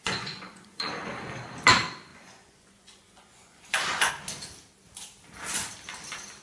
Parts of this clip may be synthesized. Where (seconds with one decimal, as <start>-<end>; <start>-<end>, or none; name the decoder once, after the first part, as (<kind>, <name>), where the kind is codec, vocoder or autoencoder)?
0.0-1.1 (vocoder, Vocos); 2.1-4.1